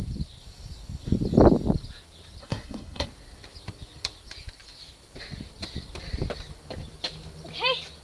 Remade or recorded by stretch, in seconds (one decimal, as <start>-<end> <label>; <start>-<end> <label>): 0.0-2.4 recorded; 2.4-3.1 remade; 3.1-8.0 recorded